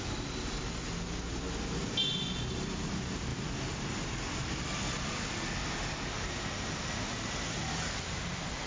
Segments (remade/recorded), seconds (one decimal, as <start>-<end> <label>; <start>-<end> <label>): 0.0-3.3 recorded; 3.3-5.9 remade; 5.9-8.7 recorded